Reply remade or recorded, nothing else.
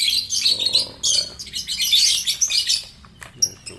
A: recorded